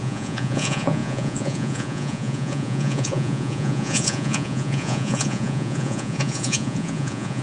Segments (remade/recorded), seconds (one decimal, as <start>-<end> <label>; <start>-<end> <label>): 0.0-7.4 remade